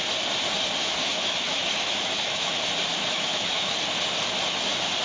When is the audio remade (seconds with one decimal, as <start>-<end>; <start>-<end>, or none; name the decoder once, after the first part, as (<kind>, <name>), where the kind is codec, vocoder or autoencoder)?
0.8-2.5 (autoencoder, DAC-VAE); 2.9-3.7